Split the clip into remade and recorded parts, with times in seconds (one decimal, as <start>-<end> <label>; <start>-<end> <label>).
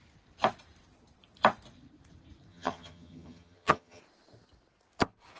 0.0-2.5 recorded; 2.5-4.0 remade; 4.0-5.4 recorded